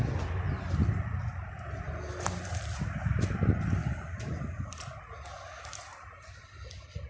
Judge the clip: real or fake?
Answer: real